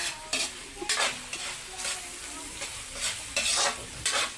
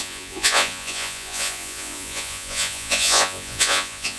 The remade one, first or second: second